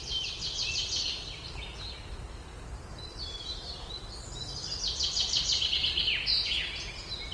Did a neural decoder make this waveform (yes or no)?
no